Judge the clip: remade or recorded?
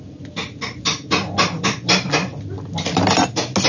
recorded